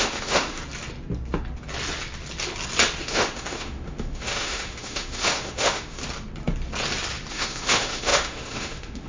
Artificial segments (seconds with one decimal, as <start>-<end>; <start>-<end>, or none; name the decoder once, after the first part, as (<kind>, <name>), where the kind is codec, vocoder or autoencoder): 0.0-0.6 (autoencoder, DAC-VAE); 3.0-6.0; 7.3-9.1